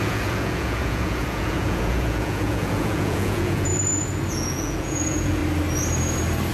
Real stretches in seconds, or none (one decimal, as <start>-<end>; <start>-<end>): 3.7-4.3; 5.4-6.5

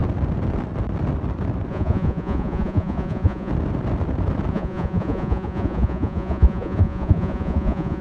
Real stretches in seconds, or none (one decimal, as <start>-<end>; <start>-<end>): 0.0-1.7; 3.5-4.5

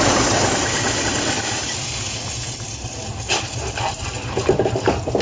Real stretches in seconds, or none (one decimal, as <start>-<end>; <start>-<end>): 0.0-5.2